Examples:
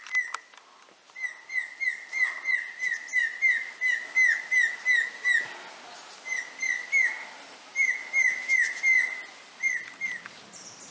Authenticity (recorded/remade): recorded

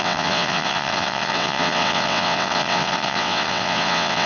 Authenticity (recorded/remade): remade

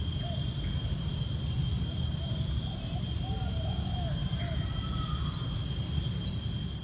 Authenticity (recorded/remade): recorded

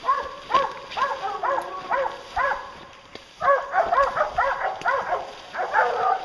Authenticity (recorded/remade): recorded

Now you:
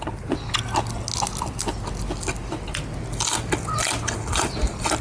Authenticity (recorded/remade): recorded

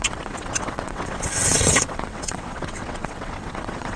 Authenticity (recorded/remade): remade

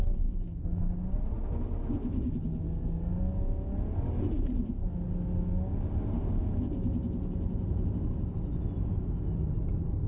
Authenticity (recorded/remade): recorded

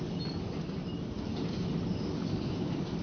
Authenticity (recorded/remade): recorded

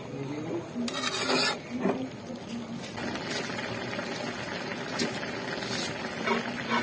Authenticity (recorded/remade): recorded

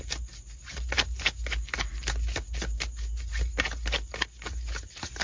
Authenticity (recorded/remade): recorded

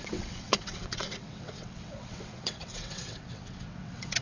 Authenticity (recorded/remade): remade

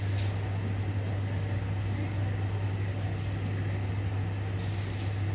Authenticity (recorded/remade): recorded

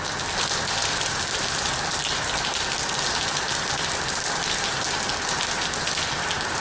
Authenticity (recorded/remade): recorded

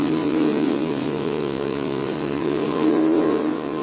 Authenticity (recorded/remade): remade